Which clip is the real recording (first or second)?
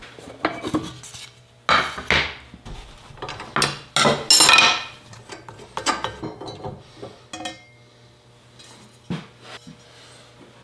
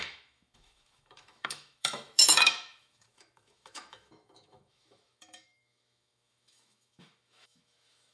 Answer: first